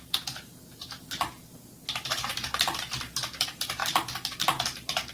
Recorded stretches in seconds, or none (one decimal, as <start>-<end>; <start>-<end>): 3.8-5.1

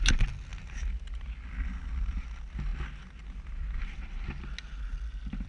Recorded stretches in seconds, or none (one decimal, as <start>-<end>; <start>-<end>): 0.0-5.5

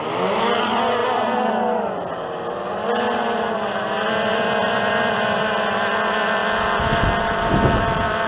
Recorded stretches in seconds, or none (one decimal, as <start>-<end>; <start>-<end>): 0.0-1.0; 1.5-2.9; 5.5-8.3

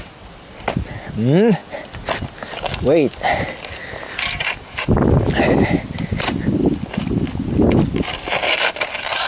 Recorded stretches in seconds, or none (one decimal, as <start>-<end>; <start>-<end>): 0.0-9.3

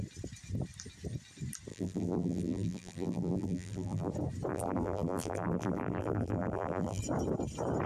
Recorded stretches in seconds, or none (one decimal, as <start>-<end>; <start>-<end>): 0.0-1.7; 4.1-4.5; 7.0-7.9

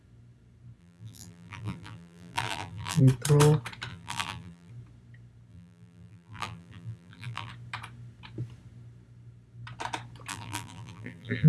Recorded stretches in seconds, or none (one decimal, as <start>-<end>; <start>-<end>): 0.0-0.8; 3.0-3.9; 4.7-5.5; 7.5-10.3

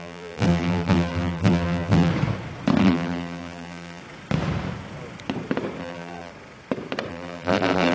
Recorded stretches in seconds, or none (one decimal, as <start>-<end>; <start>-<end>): 2.1-2.8; 4.0-5.8; 6.3-7.1

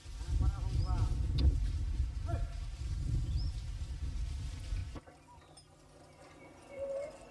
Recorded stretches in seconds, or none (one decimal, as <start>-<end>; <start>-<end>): 0.0-7.3